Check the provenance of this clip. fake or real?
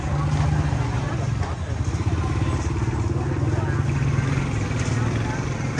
real